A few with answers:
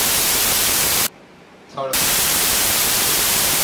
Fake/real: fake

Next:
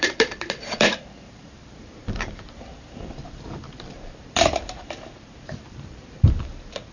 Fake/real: fake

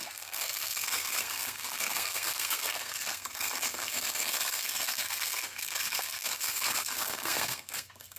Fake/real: fake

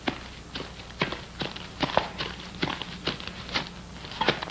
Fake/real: real